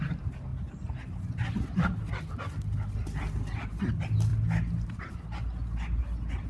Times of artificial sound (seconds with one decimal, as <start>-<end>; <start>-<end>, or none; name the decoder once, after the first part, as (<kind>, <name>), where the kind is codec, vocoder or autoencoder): none